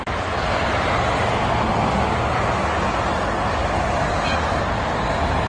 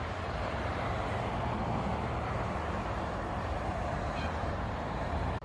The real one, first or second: first